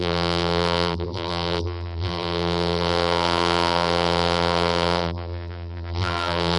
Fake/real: fake